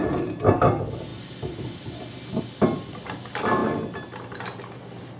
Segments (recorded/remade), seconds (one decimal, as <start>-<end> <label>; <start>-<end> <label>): 0.0-1.1 recorded; 1.1-2.4 remade; 2.4-5.2 recorded